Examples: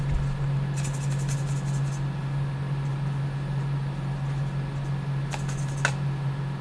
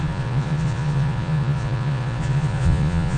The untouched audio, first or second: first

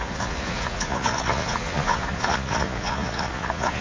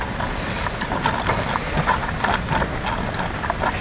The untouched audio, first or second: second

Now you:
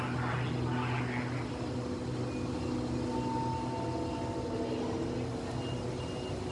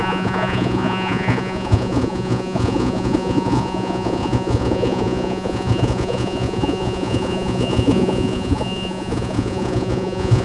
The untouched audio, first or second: first